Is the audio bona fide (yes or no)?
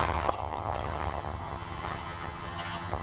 no